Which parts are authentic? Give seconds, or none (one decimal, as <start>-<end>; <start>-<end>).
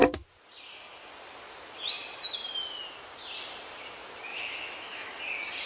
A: 0.0-4.3; 5.2-5.7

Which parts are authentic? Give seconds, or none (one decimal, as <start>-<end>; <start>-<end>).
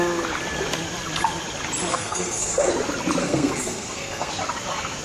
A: 0.0-1.9; 2.7-3.2; 4.3-5.0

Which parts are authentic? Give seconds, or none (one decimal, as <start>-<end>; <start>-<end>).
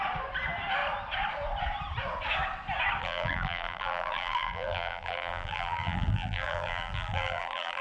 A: 0.0-3.0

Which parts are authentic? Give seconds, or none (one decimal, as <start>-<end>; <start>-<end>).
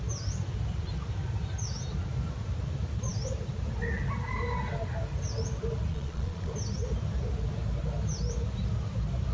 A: 0.0-5.9; 6.5-9.3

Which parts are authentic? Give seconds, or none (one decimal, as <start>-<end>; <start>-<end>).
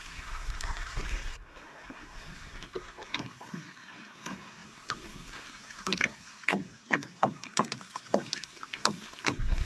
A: none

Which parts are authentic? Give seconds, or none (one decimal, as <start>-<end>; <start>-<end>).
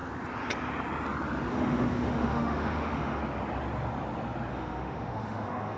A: 0.0-1.5; 3.2-4.5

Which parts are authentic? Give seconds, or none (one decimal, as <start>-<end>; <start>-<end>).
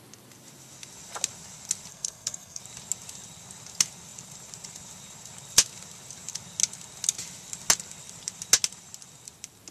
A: 0.0-1.9; 2.6-9.7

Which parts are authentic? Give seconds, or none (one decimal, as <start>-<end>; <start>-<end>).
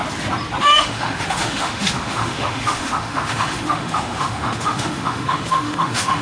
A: 0.0-0.6